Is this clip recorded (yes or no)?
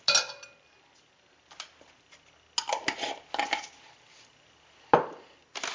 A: yes